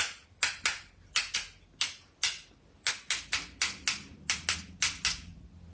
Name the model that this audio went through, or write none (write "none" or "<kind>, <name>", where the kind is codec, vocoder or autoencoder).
none